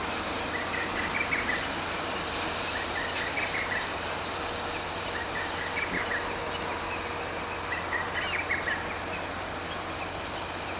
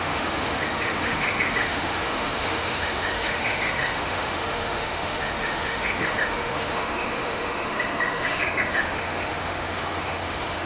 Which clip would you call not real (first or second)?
second